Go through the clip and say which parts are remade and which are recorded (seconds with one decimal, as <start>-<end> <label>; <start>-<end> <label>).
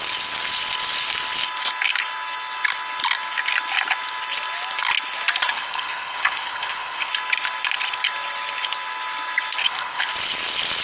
0.0-5.5 recorded; 5.5-7.1 remade; 7.1-9.6 recorded; 9.6-10.1 remade; 10.1-10.8 recorded